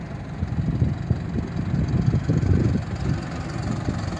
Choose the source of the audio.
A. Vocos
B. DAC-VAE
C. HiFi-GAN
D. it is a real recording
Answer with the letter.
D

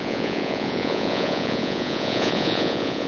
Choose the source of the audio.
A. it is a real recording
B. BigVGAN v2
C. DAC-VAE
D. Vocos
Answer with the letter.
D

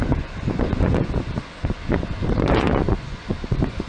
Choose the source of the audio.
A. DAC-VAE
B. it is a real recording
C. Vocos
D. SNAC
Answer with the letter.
C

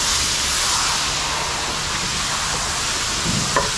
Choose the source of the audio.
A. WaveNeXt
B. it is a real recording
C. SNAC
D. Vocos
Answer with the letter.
B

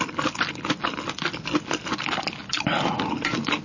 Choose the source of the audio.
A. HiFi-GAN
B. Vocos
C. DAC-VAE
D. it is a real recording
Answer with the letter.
D